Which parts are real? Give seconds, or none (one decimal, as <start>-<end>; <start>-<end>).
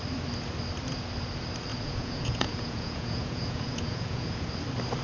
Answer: 0.0-1.7; 4.5-5.0